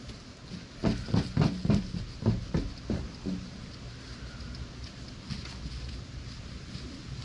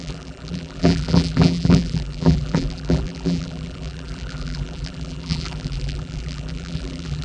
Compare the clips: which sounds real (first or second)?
first